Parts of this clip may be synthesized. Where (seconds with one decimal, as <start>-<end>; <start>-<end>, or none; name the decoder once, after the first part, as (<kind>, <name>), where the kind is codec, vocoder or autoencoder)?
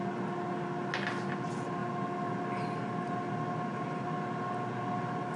none